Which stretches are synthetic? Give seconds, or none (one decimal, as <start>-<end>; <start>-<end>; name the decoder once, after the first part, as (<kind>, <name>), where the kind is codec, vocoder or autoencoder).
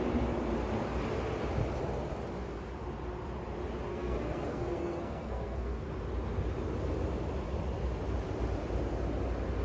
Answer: 3.9-5.9 (codec, SNAC)